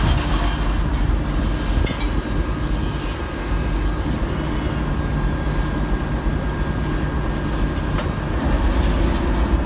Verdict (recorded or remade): recorded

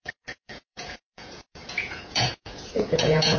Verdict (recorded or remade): remade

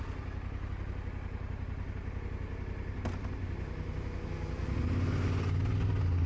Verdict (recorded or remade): recorded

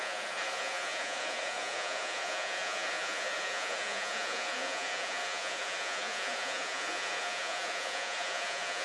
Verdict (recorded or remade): remade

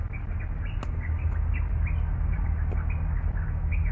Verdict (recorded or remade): recorded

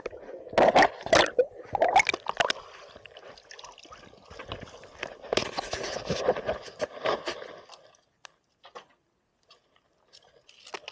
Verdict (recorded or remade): recorded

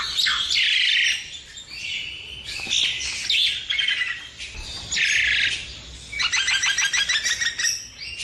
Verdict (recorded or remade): recorded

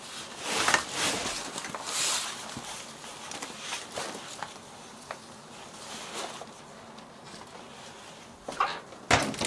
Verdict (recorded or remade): recorded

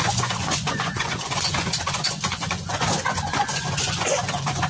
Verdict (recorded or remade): remade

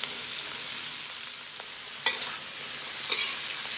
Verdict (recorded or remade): recorded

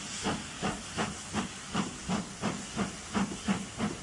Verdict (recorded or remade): recorded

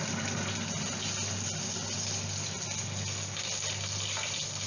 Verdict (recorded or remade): recorded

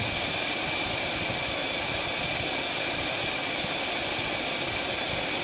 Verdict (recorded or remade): recorded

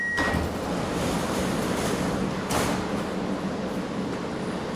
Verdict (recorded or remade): recorded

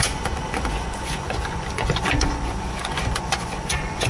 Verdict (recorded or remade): remade